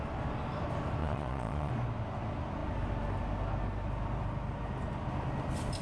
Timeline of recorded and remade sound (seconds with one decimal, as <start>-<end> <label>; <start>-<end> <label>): 0.0-1.0 recorded; 1.0-1.7 remade; 1.7-5.8 recorded